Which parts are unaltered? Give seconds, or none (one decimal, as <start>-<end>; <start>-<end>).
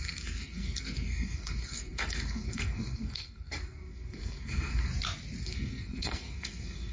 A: 4.9-5.4